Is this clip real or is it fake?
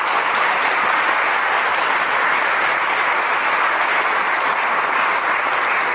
real